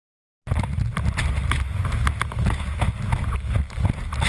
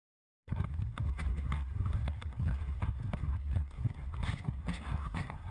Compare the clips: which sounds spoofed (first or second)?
second